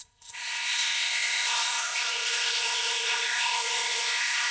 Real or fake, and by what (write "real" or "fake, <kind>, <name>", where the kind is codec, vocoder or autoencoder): fake, codec, ZipCodec